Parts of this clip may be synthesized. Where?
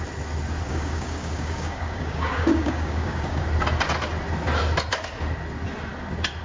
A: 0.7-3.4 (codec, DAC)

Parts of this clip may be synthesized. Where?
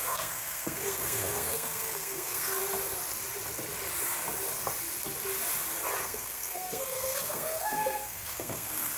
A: 0.0-2.6 (codec, SNAC); 6.0-9.0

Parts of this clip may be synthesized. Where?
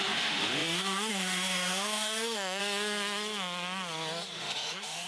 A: 0.0-2.6 (autoencoder, DAC-VAE); 4.4-5.1